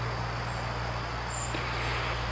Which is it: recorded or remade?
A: recorded